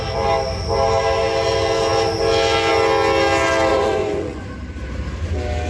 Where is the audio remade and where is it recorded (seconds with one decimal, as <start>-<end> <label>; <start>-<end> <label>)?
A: 0.0-3.7 recorded; 3.7-4.4 remade; 4.4-5.7 recorded